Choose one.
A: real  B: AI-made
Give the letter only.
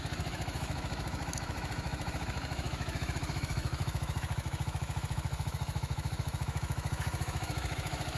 B